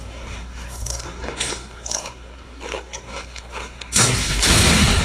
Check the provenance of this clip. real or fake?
fake